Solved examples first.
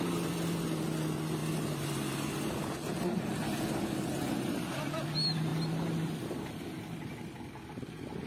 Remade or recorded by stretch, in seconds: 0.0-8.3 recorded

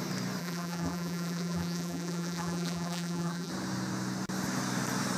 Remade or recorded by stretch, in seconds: 0.0-0.4 recorded; 0.4-3.5 remade; 3.5-5.2 recorded